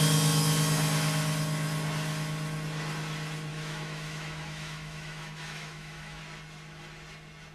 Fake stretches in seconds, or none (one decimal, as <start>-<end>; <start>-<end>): 3.5-6.2